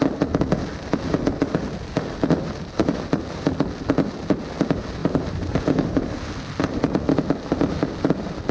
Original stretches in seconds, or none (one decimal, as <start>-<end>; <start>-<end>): 0.0-5.0; 6.1-8.5

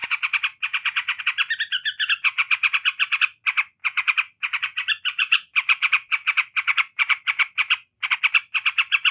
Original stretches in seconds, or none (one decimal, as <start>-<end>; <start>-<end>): 0.0-3.8; 8.2-9.1

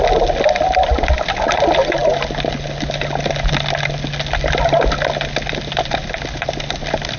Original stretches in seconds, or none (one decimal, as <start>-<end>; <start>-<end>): 0.0-7.2

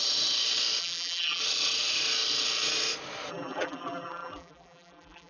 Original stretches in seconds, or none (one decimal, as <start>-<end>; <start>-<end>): 0.0-0.8; 1.4-3.3

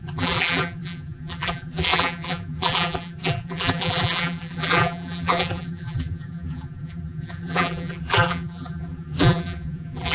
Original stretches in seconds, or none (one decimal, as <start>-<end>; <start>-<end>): none